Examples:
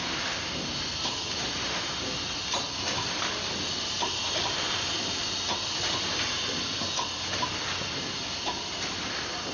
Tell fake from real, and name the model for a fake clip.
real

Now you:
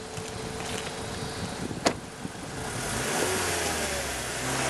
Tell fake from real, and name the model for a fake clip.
real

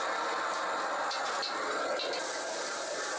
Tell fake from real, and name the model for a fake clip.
real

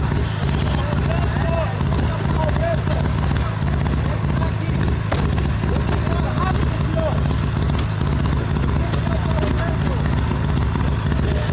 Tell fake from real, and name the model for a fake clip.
real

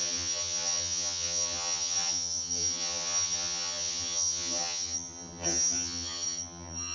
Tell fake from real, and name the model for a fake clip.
fake, vocoder, HiFi-GAN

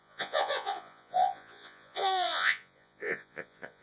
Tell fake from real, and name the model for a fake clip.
fake, vocoder, Vocos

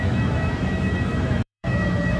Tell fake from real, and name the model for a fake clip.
fake, autoencoder, DAC-VAE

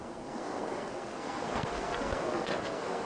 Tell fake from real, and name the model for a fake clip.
fake, codec, SNAC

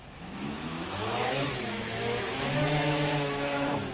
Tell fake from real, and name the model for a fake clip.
fake, autoencoder, DAC-VAE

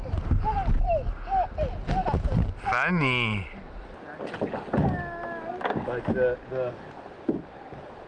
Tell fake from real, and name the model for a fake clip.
real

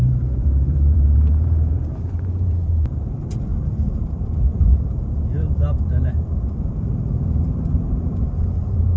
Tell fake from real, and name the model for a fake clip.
fake, vocoder, BigVGAN v2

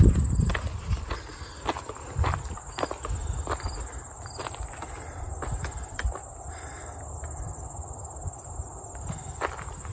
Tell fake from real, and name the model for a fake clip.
real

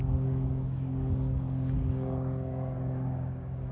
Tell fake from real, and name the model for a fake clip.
fake, codec, DAC